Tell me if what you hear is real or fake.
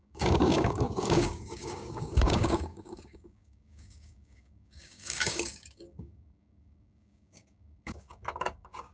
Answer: fake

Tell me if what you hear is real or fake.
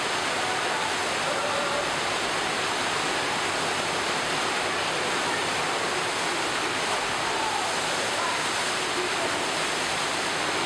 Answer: real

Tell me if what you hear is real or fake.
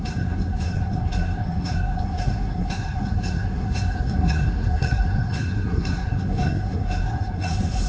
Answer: fake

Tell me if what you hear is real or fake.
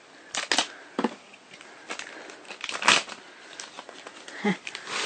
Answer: real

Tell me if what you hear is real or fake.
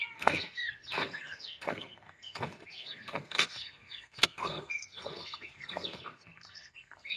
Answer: fake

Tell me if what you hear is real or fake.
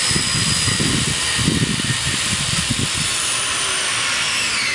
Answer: fake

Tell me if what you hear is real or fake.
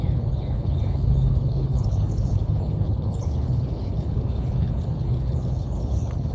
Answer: fake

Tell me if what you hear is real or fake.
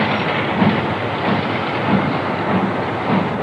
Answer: real